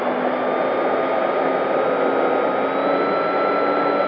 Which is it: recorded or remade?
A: recorded